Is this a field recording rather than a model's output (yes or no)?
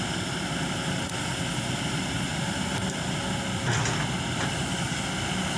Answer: yes